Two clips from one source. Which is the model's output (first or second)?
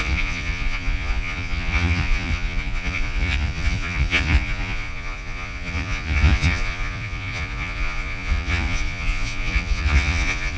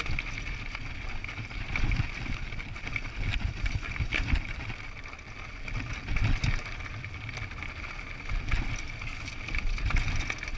first